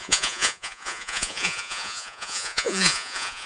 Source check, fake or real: fake